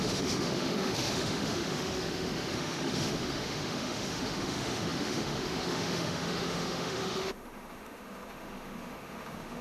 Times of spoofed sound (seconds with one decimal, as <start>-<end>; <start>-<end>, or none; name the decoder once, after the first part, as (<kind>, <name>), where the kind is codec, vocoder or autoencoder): 0.0-9.6 (autoencoder, DAC-VAE)